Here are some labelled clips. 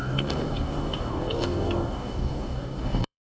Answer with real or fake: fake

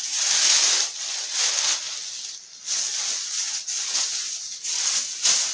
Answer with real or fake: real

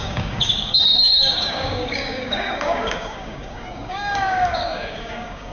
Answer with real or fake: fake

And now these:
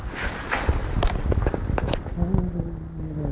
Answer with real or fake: real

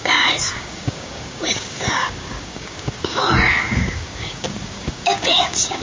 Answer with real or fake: fake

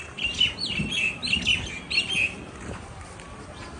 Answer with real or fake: real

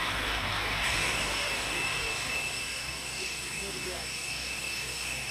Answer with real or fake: fake